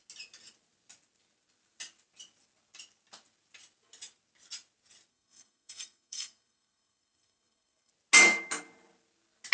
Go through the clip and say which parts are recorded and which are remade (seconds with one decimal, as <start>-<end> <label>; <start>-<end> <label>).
0.0-5.1 recorded; 5.1-7.9 remade; 7.9-9.5 recorded